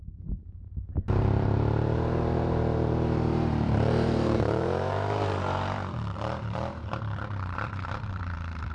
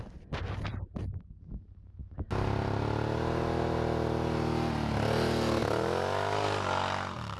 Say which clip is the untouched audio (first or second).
second